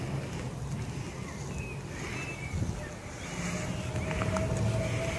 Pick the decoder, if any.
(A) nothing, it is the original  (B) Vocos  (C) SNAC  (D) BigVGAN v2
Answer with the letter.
A